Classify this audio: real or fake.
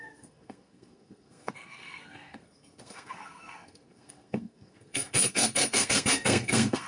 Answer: fake